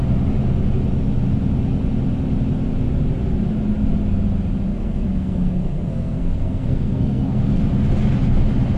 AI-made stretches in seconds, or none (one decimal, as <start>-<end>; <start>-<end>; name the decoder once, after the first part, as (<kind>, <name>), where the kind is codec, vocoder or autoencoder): 4.7-7.6 (codec, SNAC)